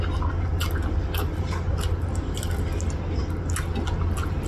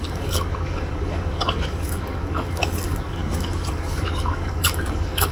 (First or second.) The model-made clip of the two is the second